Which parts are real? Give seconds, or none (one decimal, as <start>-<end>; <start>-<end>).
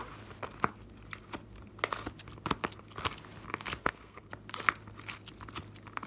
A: 0.0-3.8; 4.3-6.1